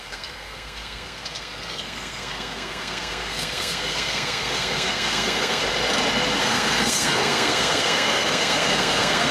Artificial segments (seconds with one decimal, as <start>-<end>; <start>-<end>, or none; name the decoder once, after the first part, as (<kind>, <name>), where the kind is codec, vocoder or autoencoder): 0.0-5.6 (codec, SNAC); 6.4-9.3